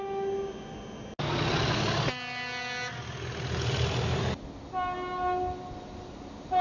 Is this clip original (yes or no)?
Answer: yes